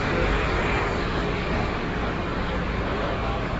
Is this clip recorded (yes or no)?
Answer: no